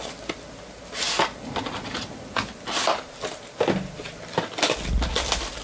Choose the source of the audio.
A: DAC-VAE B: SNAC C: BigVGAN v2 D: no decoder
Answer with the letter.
D